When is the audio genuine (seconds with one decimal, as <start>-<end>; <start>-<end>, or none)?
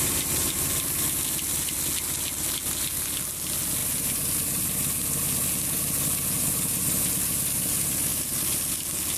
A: 0.0-9.2